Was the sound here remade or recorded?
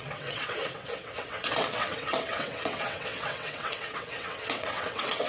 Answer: remade